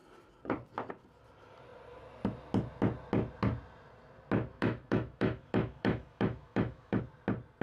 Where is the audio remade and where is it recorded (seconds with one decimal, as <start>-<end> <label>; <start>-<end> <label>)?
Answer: 0.0-4.5 recorded; 4.5-7.0 remade; 7.0-7.6 recorded